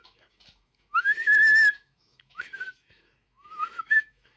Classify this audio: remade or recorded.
remade